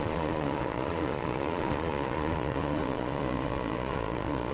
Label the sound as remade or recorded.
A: remade